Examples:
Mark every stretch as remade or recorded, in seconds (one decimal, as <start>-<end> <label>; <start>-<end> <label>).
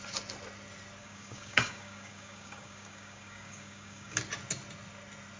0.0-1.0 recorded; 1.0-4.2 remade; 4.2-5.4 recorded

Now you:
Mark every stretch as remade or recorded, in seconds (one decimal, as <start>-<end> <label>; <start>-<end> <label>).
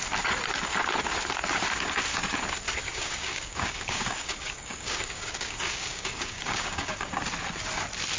0.0-2.9 recorded; 2.9-7.1 remade; 7.1-8.2 recorded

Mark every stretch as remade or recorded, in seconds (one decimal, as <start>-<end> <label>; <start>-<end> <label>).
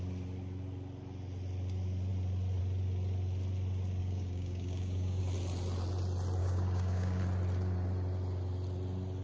0.0-4.0 recorded; 4.0-5.2 remade; 5.2-6.4 recorded; 6.4-7.2 remade; 7.2-9.2 recorded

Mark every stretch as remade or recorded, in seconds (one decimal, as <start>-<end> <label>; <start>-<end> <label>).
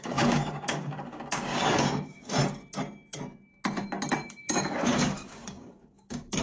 0.0-2.4 remade; 2.4-4.4 recorded; 4.4-6.4 remade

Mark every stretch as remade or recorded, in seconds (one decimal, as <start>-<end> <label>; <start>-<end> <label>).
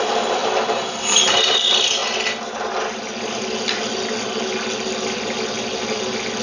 0.0-6.4 recorded